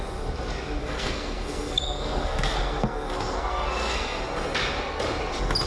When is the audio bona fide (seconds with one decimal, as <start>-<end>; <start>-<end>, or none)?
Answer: 0.0-0.8; 4.2-5.7